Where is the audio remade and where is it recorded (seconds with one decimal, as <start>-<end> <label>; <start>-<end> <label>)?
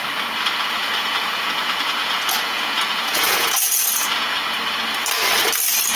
0.0-0.8 recorded; 0.8-4.4 remade; 4.4-6.0 recorded